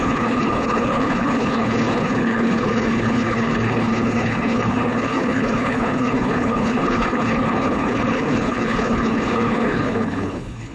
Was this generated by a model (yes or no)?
yes